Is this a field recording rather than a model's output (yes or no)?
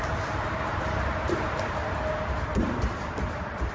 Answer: yes